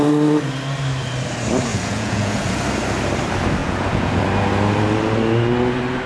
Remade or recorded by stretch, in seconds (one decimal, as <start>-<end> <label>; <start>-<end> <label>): 0.0-1.7 recorded; 1.7-2.6 remade; 2.6-3.6 recorded; 3.6-4.2 remade; 4.2-6.1 recorded